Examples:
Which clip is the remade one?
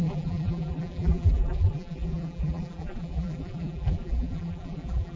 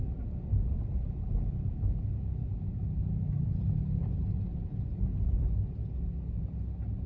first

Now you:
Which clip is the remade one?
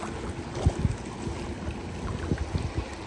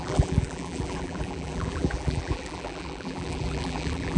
second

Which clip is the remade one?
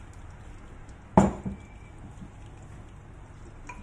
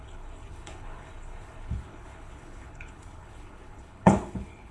second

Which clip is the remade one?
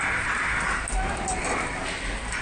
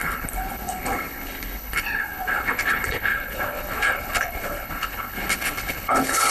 second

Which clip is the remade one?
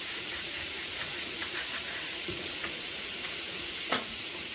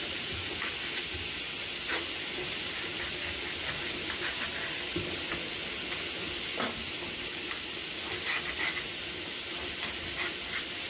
first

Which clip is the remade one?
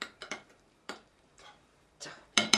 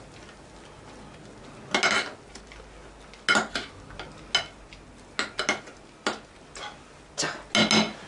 first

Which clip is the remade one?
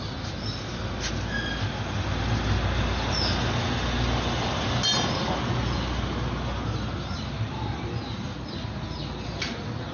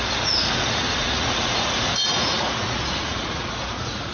second